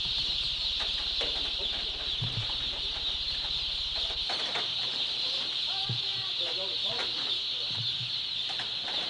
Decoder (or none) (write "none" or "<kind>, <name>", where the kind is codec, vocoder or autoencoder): vocoder, BigVGAN v2